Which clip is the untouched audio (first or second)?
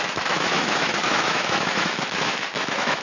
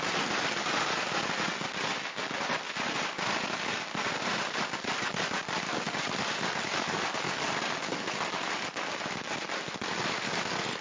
second